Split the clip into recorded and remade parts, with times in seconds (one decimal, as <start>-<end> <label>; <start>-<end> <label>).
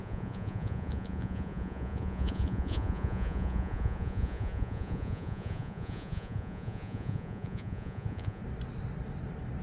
0.0-8.4 remade; 8.4-9.6 recorded